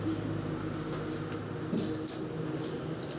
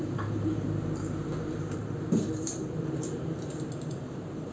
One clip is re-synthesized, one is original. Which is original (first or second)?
first